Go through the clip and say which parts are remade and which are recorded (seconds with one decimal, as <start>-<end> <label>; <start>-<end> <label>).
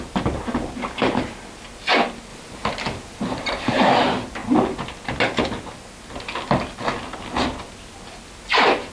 0.0-2.3 recorded; 2.3-3.8 remade; 3.8-8.9 recorded